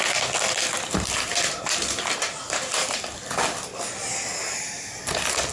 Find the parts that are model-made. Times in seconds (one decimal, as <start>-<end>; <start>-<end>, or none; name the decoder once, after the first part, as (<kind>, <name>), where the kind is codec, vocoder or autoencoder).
0.7-3.1 (vocoder, BigVGAN v2); 4.3-5.0